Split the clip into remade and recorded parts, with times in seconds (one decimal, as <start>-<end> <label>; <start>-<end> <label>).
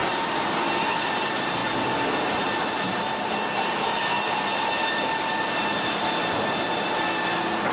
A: 0.0-0.6 remade; 0.6-1.6 recorded; 1.6-4.6 remade; 4.6-7.7 recorded